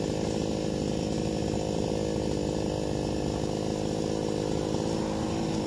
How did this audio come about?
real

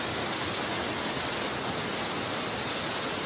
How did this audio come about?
fake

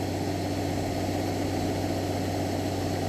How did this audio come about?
real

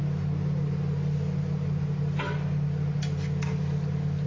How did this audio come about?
real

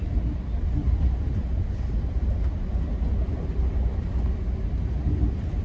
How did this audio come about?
real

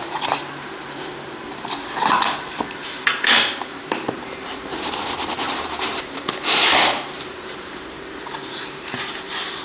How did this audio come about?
fake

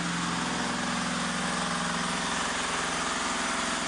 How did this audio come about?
real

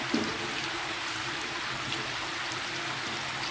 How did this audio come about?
fake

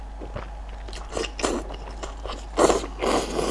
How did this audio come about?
real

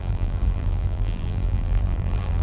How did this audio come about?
fake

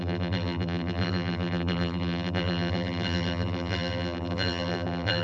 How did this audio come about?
fake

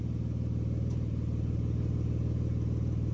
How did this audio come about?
real